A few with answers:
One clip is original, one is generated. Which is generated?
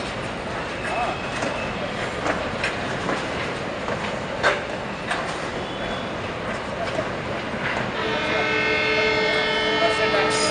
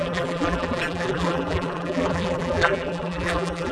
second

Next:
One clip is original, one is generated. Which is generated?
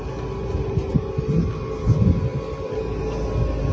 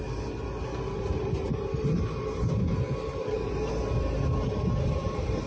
second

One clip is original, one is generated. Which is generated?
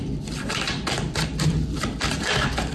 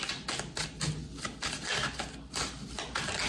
first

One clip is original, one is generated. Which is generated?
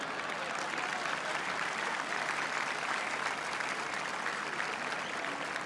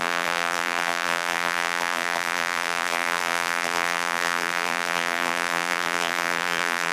second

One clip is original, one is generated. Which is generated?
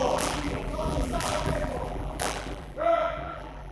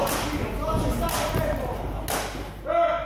first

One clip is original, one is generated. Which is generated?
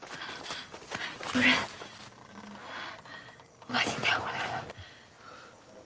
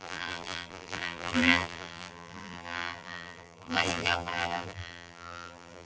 second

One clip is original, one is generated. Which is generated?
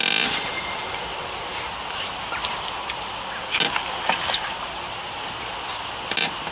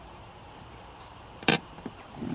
second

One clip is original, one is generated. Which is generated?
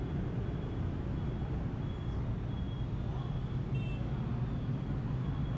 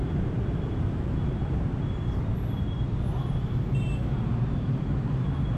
second